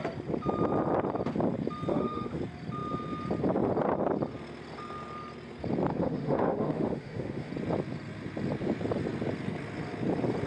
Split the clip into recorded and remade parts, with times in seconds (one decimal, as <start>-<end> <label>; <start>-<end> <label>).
0.0-1.9 recorded; 1.9-2.4 remade; 2.4-5.9 recorded; 5.9-7.5 remade; 7.5-10.5 recorded